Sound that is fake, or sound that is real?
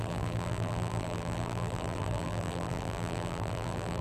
fake